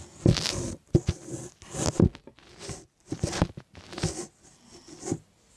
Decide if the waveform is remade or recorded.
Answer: recorded